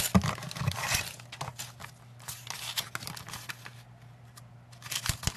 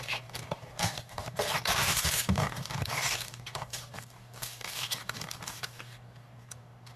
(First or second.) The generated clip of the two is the second